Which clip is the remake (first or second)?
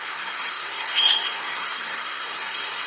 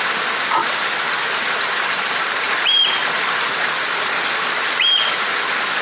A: first